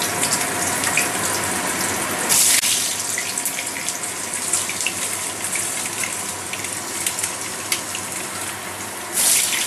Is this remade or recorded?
recorded